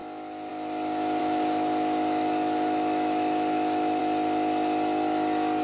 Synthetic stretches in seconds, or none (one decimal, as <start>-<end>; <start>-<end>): 1.2-4.0